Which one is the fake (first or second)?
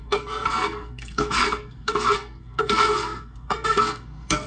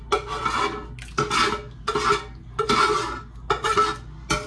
first